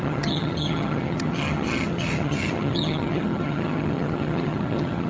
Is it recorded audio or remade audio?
remade